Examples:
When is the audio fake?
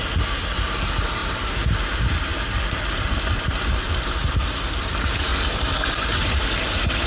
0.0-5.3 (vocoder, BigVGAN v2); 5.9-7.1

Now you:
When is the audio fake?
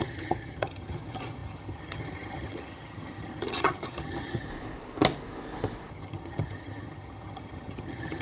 0.0-4.5 (vocoder, HiFi-GAN); 5.9-8.2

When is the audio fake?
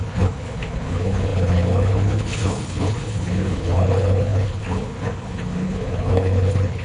0.0-6.8 (codec, HILCodec)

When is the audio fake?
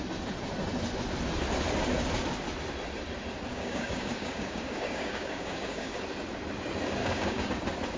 3.5-6.0 (codec, DAC); 7.0-7.5